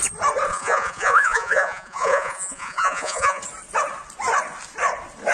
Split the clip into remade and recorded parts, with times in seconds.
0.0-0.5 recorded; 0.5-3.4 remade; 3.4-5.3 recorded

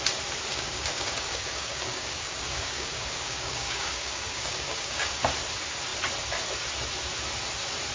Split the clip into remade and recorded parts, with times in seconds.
0.0-0.5 recorded; 0.5-5.2 remade; 5.2-7.9 recorded

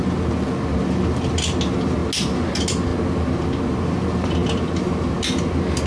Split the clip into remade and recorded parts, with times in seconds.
0.0-5.9 recorded

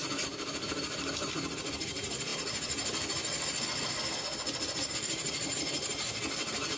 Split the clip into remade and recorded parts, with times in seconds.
0.0-6.8 recorded